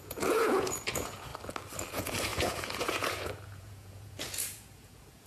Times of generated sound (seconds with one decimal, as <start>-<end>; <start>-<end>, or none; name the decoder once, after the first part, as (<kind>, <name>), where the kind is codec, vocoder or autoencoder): 0.0-1.3 (vocoder, Vocos); 1.9-5.3